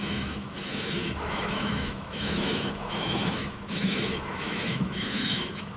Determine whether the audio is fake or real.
fake